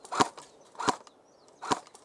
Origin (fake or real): real